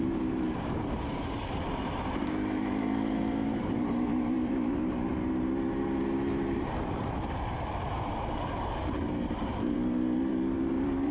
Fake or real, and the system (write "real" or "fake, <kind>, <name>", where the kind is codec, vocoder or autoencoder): fake, vocoder, BigVGAN v2